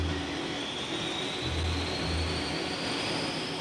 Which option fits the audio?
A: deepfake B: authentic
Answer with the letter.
B